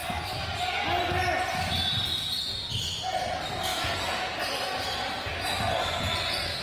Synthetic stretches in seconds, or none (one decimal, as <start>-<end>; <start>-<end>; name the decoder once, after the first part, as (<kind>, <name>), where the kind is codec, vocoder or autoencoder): 3.7-4.4 (vocoder, Vocos)